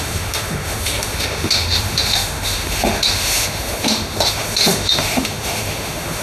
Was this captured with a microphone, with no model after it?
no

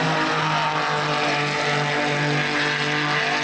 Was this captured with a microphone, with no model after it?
yes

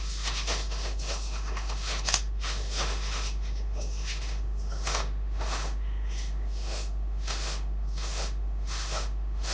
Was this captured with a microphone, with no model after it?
no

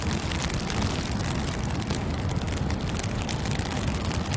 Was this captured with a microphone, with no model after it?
yes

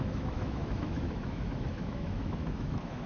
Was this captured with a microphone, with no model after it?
no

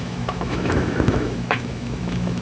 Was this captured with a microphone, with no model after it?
no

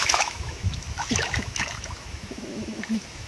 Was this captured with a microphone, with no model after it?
no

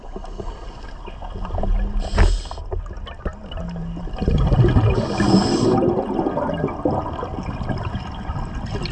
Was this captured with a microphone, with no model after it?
yes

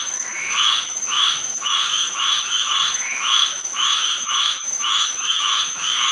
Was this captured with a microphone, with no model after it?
no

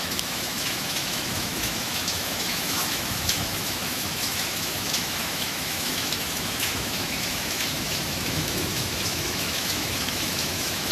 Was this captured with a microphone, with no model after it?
no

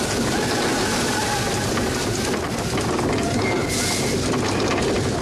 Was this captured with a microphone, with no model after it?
yes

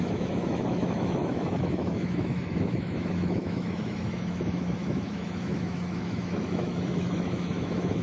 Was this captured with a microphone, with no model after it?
no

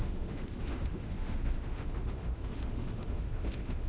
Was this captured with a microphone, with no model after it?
no